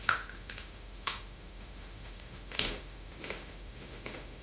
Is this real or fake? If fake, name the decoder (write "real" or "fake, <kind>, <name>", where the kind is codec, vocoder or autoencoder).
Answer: fake, autoencoder, DAC-VAE